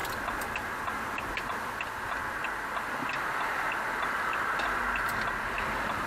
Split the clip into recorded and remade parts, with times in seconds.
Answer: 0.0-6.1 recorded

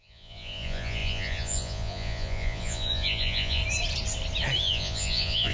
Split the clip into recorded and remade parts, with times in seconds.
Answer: 0.0-3.6 remade; 3.6-4.6 recorded; 4.6-5.5 remade

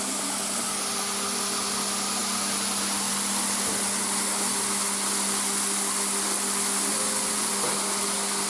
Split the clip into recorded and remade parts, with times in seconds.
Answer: 0.0-6.9 recorded; 6.9-7.5 remade; 7.5-8.5 recorded

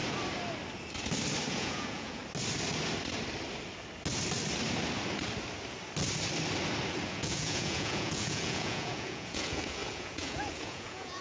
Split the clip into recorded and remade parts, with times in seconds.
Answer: 0.0-1.5 recorded; 1.5-2.2 remade; 2.2-7.1 recorded; 7.1-11.2 remade